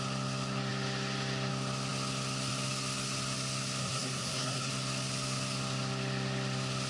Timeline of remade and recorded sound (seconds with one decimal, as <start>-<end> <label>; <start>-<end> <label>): 0.0-3.8 recorded; 3.8-4.7 remade; 4.7-6.9 recorded